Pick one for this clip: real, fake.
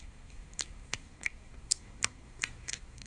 fake